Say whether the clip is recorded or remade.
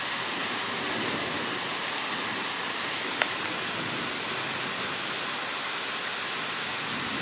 recorded